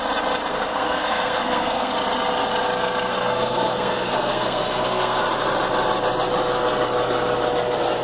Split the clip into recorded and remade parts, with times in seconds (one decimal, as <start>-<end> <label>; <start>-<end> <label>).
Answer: 0.0-0.5 recorded; 0.5-1.9 remade; 1.9-3.1 recorded; 3.1-5.2 remade; 5.2-8.0 recorded